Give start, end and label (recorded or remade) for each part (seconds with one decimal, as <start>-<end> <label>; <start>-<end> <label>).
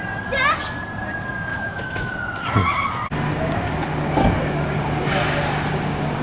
0.0-1.5 recorded; 1.5-2.1 remade; 2.1-6.2 recorded